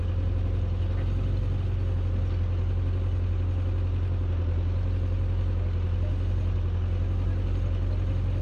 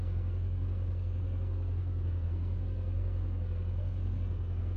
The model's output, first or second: second